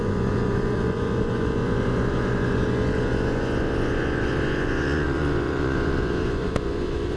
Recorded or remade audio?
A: remade